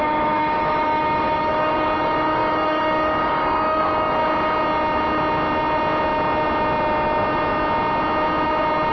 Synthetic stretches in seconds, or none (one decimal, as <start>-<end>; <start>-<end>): 0.0-4.2